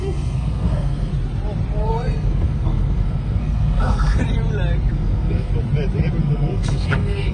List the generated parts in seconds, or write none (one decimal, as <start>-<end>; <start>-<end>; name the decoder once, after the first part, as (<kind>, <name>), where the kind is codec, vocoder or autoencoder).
0.0-1.1 (codec, SNAC); 1.8-4.2; 4.9-5.5; 6.2-7.3